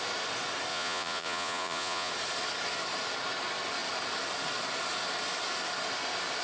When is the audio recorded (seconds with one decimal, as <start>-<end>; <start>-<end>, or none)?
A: 0.0-0.7; 2.1-6.4